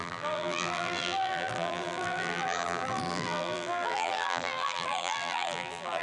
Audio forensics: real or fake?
fake